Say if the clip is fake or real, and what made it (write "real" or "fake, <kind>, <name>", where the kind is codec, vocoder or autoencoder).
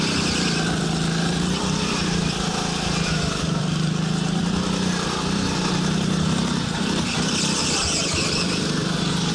fake, vocoder, BigVGAN v2